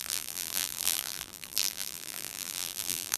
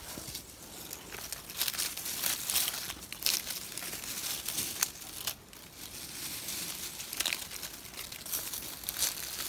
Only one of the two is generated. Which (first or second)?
first